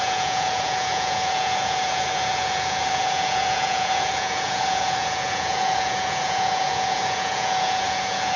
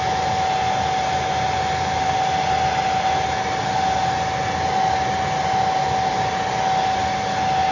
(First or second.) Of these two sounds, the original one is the second